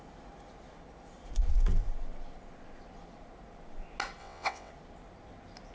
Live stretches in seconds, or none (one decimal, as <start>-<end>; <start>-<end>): 0.0-4.2; 4.7-5.7